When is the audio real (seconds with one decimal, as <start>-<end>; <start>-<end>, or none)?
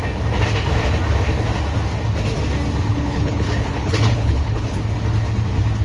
0.0-2.9; 4.8-5.8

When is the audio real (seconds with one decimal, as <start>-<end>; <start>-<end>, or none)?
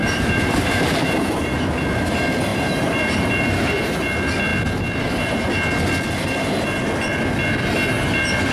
1.6-2.5; 3.8-8.5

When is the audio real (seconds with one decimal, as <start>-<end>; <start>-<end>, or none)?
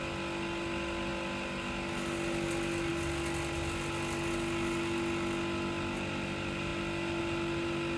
0.0-8.0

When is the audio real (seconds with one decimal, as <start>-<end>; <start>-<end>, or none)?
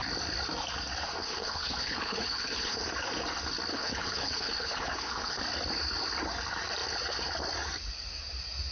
0.0-1.2; 2.9-3.7; 5.4-8.7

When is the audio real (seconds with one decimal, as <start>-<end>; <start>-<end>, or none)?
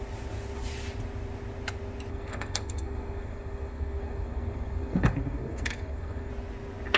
0.0-2.1; 6.3-7.0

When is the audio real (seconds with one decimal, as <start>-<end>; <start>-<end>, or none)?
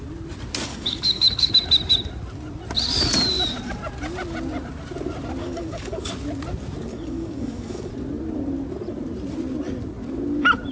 0.0-0.7; 1.5-5.4; 6.1-6.9; 7.9-10.7